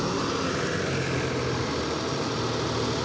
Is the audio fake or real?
real